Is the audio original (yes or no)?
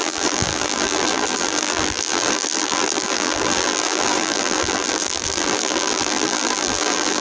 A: no